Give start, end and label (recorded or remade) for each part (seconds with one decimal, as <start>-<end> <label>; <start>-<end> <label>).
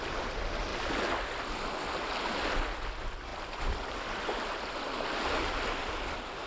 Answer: 0.0-6.5 recorded